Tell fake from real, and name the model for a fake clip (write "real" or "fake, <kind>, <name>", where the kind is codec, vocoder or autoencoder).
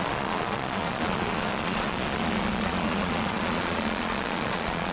fake, vocoder, Vocos